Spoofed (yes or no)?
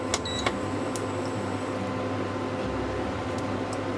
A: no